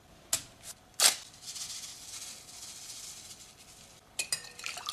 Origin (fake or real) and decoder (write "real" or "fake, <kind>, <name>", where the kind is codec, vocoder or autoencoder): real